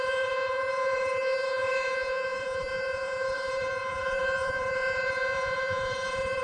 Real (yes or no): no